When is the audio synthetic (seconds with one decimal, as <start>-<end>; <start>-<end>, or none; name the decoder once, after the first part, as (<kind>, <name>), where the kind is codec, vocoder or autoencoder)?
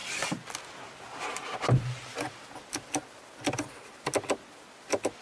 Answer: none